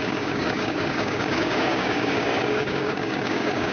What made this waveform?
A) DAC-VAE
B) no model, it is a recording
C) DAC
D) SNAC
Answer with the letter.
C